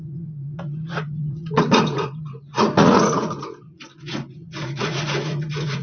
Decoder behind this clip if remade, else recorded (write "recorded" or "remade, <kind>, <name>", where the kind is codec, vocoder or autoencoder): remade, vocoder, Vocos